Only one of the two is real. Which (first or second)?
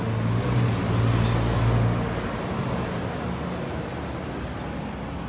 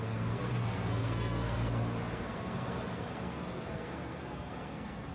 first